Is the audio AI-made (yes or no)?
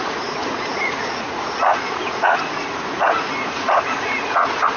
yes